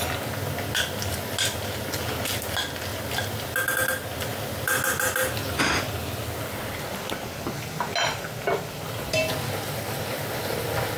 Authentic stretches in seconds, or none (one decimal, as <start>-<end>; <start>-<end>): 0.0-11.0